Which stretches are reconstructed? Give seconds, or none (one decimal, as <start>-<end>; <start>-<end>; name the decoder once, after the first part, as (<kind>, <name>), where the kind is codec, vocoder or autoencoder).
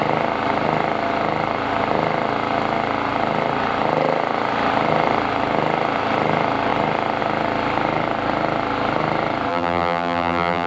9.5-10.7 (vocoder, BigVGAN v2)